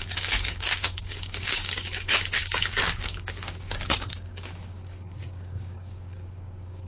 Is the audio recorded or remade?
remade